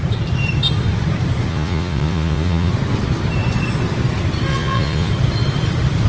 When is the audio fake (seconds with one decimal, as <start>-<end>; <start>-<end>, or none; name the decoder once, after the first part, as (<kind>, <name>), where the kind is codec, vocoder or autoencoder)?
1.5-2.7 (vocoder, Vocos); 4.5-5.1